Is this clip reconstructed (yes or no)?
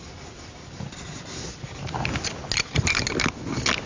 no